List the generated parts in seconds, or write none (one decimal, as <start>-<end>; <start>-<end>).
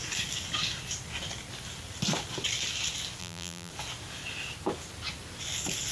3.2-3.7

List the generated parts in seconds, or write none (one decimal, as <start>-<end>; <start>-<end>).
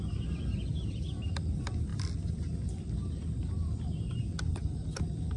none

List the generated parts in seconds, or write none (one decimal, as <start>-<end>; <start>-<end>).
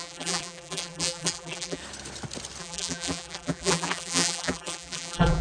0.0-1.8; 2.6-5.4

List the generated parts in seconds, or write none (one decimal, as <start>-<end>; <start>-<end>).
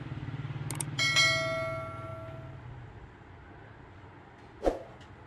none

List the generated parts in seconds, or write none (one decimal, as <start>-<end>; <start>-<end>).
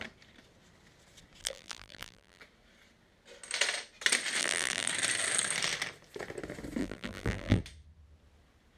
1.4-2.4; 4.4-4.9; 6.8-7.6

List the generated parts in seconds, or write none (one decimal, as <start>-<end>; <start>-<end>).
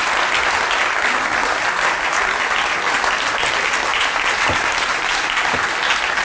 3.9-5.6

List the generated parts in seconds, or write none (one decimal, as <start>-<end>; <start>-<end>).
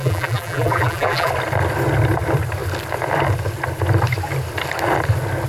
0.0-1.3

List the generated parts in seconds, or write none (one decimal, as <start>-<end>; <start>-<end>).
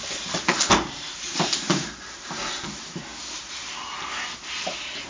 0.0-3.1; 4.6-5.1